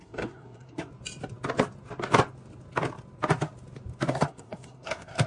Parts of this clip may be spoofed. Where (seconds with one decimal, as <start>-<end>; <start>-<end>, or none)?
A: 0.0-0.9; 4.1-5.3